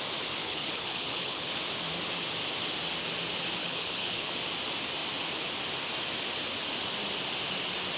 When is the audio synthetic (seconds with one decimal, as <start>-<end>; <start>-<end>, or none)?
0.4-1.5; 3.6-4.3